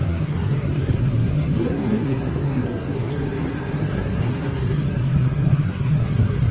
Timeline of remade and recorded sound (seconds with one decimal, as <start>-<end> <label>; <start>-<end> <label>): 0.0-6.5 remade